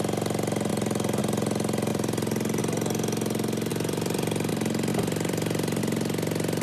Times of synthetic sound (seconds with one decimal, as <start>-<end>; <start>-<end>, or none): 1.9-2.6; 3.7-4.5; 4.9-5.8

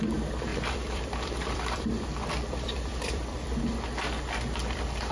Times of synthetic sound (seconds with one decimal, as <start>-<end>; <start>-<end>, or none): 0.5-3.6; 4.6-5.1

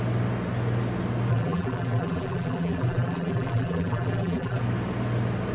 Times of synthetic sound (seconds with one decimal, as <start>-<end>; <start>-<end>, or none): 1.3-4.6

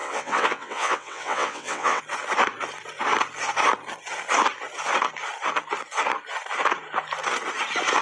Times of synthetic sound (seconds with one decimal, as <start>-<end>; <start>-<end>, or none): 0.0-2.0

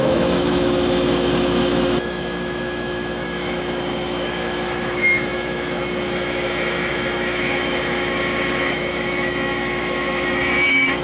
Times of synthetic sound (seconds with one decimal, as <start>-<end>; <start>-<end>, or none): 0.0-11.0

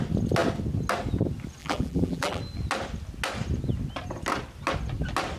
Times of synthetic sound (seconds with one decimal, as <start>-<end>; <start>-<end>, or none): 1.6-2.4